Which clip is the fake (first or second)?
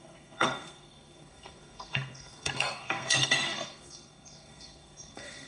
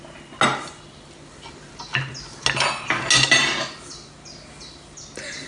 first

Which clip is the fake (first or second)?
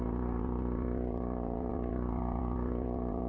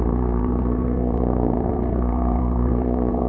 second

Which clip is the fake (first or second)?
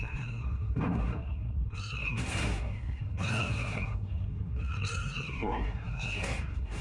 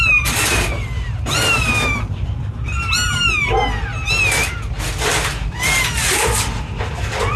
first